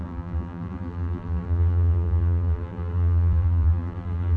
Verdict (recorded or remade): remade